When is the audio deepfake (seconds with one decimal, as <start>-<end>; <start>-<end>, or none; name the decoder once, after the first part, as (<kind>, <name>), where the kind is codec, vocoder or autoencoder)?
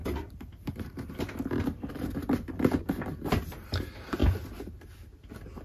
none